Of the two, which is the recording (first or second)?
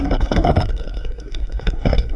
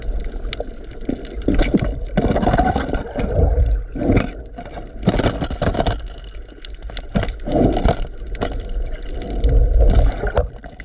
second